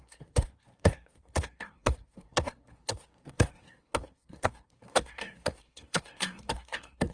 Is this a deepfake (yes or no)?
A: yes